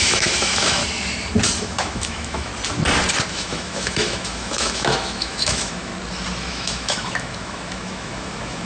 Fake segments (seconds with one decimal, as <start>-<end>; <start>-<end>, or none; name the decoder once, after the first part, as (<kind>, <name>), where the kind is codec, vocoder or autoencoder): 0.0-0.8 (autoencoder, DAC-VAE); 1.6-2.5; 3.3-5.9; 6.5-8.6

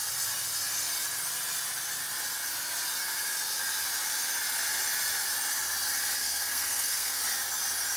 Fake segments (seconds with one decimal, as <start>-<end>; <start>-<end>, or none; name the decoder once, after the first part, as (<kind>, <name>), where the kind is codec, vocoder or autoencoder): 6.2-7.2 (codec, SNAC)

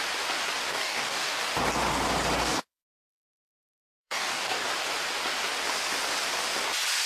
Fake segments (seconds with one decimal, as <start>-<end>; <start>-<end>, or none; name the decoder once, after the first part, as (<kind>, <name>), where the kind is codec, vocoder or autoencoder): 0.7-1.4 (codec, DAC); 2.4-3.1; 3.8-4.7

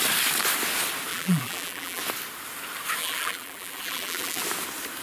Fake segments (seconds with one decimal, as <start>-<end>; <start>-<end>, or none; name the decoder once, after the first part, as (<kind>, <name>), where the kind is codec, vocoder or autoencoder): 1.1-2.0 (vocoder, BigVGAN v2); 3.0-4.4

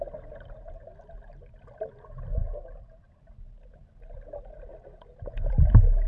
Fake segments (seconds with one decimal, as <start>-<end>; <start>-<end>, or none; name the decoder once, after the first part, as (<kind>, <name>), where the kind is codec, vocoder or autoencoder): none

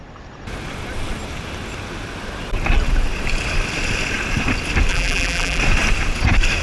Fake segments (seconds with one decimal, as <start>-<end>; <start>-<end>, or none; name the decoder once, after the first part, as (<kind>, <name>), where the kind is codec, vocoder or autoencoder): 4.9-5.6 (vocoder, BigVGAN v2)